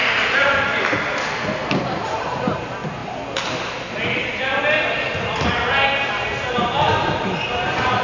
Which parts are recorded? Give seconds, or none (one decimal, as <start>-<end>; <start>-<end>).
0.8-1.6; 2.2-3.0